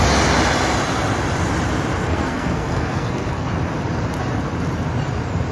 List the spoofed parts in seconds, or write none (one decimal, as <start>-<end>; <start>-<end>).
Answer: 2.1-3.5